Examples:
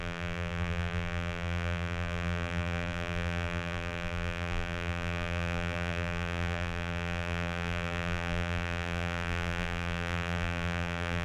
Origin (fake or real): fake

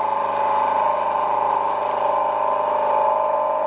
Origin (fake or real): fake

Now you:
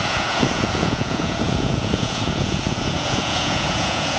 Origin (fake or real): fake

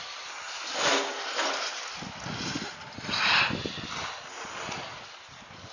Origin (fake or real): real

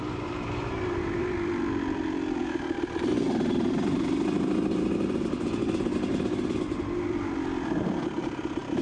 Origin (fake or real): fake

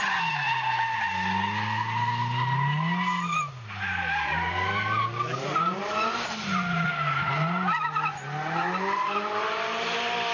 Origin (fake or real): real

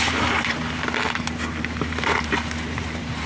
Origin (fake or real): fake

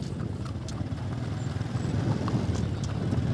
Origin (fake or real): real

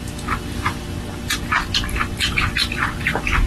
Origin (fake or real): real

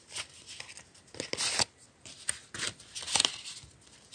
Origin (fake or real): real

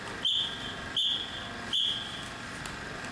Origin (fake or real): real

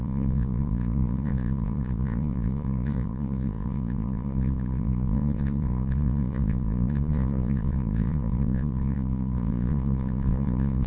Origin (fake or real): fake